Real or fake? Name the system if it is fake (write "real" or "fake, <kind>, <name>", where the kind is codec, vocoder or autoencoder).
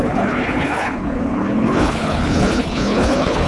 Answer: fake, codec, HILCodec